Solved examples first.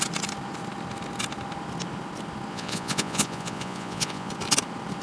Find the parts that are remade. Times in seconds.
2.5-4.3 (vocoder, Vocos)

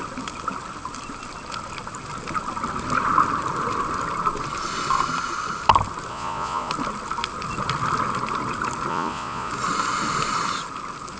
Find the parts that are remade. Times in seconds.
6.1-6.7 (vocoder, Vocos); 8.9-9.5

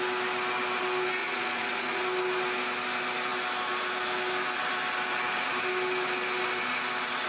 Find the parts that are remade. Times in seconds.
1.2-2.0 (vocoder, Vocos)

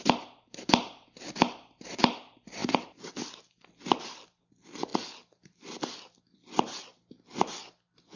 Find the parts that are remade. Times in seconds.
none

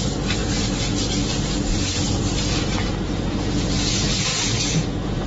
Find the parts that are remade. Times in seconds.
4.3-5.3 (vocoder, Vocos)